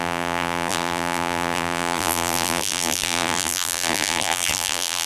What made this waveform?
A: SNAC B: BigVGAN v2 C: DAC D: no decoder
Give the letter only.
B